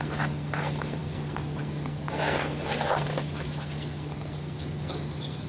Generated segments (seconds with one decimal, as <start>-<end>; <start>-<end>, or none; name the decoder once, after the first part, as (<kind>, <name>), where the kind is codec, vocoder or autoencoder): 0.0-5.5 (codec, SNAC)